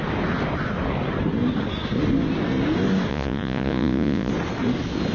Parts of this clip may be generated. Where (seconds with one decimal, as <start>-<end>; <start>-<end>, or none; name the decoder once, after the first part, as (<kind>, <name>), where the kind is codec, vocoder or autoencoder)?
3.1-4.3 (vocoder, Vocos)

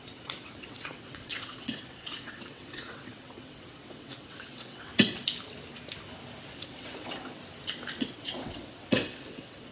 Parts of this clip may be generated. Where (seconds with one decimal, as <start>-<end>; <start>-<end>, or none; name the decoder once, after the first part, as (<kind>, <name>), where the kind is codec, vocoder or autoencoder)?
0.0-4.9 (vocoder, WaveNeXt); 6.5-7.4; 8.0-9.7

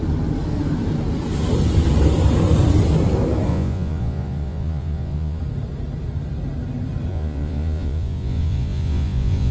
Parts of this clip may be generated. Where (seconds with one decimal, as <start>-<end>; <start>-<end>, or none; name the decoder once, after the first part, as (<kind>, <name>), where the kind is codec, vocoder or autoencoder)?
3.5-5.4 (vocoder, Vocos); 7.1-9.5

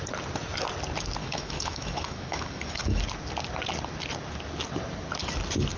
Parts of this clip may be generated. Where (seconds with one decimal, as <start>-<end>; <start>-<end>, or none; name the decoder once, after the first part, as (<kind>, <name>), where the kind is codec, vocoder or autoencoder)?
1.2-3.0 (autoencoder, DAC-VAE)

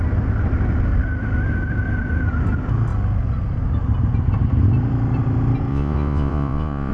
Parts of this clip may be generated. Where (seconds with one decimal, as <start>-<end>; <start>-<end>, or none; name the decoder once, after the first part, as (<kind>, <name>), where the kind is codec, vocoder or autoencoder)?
5.7-6.9 (vocoder, Vocos)

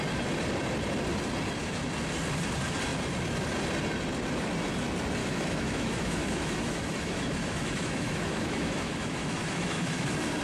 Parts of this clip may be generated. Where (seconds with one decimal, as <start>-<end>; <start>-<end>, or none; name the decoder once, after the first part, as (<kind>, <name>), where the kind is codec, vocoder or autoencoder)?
5.2-10.0 (autoencoder, DAC-VAE)

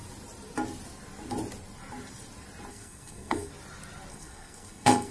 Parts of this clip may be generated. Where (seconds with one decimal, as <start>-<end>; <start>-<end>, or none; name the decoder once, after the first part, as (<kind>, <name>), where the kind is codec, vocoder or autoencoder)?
2.7-3.5 (codec, SNAC); 4.1-5.1